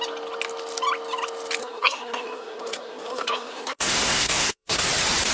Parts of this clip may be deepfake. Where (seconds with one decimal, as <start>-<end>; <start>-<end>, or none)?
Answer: 1.6-4.8